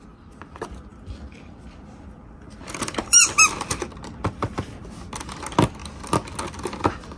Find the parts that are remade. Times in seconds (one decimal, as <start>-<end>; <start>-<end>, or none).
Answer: 0.9-4.6